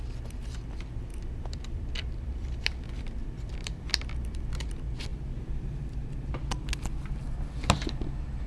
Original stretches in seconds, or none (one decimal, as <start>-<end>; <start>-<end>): 0.0-1.1; 4.4-5.1; 6.3-8.5